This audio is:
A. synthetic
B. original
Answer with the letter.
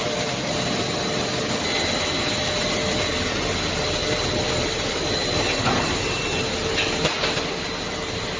B